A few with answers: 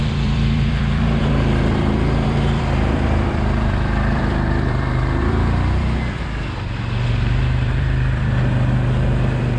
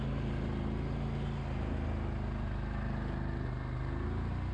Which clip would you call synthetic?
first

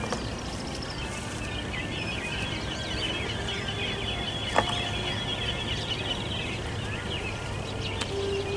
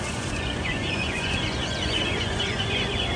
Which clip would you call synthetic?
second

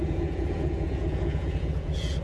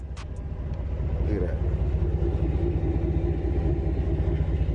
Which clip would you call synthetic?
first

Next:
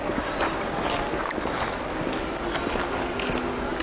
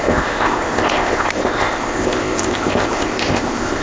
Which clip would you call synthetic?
second